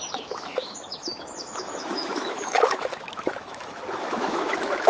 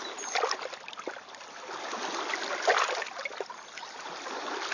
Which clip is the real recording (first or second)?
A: second